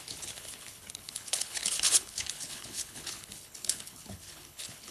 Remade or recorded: remade